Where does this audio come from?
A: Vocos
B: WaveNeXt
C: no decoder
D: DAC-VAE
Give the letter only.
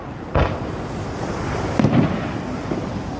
C